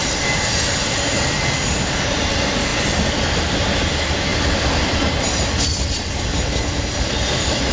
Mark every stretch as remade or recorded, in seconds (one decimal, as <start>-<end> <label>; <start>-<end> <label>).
0.0-1.8 remade; 1.8-2.7 recorded; 2.7-3.4 remade; 3.4-4.3 recorded; 4.3-7.7 remade